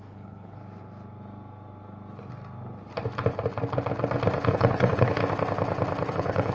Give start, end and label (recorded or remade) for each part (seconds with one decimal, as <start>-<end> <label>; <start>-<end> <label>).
0.0-0.6 remade; 0.6-4.5 recorded; 4.5-5.2 remade; 5.2-6.1 recorded; 6.1-6.5 remade